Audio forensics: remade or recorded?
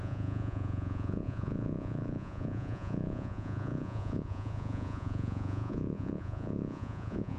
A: remade